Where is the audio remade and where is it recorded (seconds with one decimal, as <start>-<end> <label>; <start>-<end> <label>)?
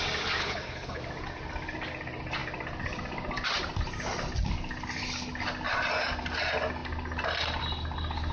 0.0-0.4 recorded; 0.4-1.0 remade; 1.0-8.3 recorded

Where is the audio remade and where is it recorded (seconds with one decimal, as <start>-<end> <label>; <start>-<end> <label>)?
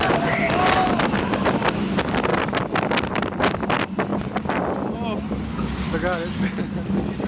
0.0-2.3 recorded; 2.3-2.9 remade; 2.9-4.1 recorded; 4.1-4.6 remade; 4.6-7.3 recorded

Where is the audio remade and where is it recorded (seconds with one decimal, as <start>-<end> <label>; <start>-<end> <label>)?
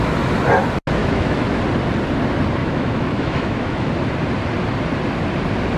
0.0-1.0 recorded; 1.0-1.6 remade; 1.6-2.6 recorded; 2.6-3.9 remade; 3.9-5.8 recorded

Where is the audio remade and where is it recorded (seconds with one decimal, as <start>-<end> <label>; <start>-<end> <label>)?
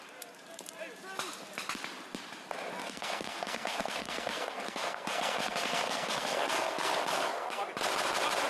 0.0-2.8 recorded; 2.8-7.6 remade; 7.6-8.5 recorded